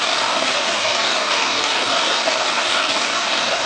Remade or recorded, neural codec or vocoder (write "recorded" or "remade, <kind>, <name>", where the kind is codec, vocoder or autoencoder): remade, codec, DAC